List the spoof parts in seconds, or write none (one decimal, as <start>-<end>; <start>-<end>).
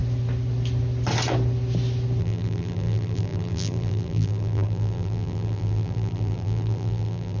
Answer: 2.2-7.4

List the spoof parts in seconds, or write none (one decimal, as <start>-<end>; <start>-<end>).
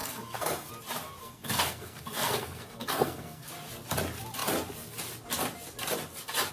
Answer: 0.0-0.7; 1.2-3.5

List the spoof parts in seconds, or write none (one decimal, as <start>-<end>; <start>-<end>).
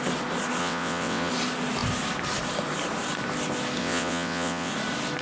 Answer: 0.6-1.3; 3.8-4.7